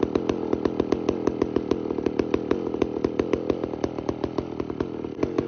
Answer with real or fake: real